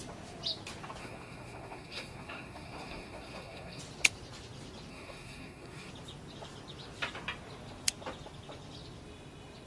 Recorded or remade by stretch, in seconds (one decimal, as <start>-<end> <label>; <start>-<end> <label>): 0.0-1.0 recorded; 1.0-3.8 remade; 3.8-4.9 recorded; 4.9-5.9 remade; 5.9-9.7 recorded